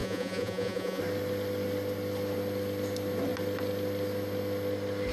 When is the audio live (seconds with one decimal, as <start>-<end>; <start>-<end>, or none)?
1.0-5.1